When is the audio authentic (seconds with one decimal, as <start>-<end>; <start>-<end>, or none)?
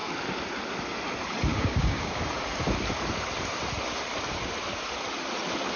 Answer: 0.0-1.5; 2.2-5.8